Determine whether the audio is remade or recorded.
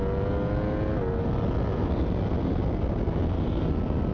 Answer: recorded